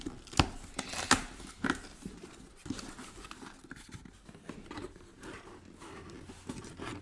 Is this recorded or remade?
recorded